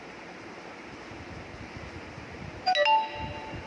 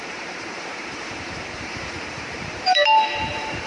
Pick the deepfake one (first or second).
second